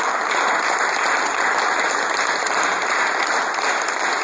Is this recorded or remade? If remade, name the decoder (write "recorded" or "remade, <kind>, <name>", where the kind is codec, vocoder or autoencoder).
recorded